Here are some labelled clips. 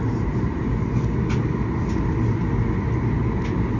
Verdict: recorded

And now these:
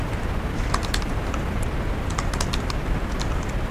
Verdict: recorded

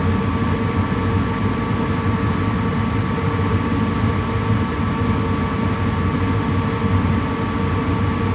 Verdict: recorded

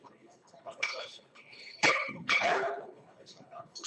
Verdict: remade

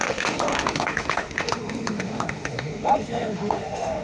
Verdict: remade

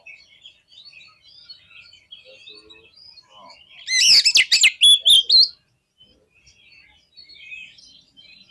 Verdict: recorded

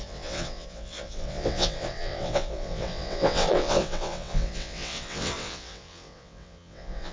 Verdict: remade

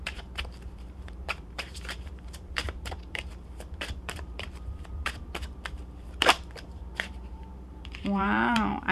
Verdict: remade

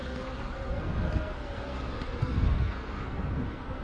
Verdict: remade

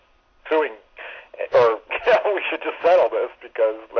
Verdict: recorded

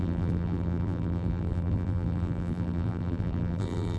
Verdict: remade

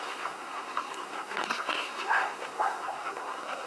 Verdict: remade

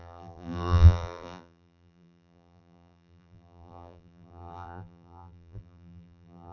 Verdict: remade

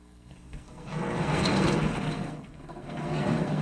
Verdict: remade